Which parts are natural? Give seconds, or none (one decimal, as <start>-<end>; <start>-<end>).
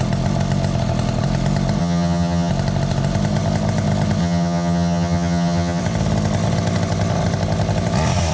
0.0-1.8; 2.5-4.2; 5.8-8.3